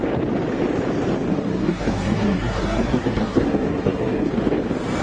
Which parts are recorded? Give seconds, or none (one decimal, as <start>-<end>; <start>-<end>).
0.0-1.3; 4.3-5.0